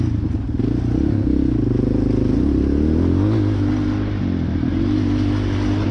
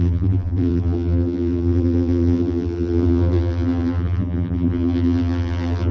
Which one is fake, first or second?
second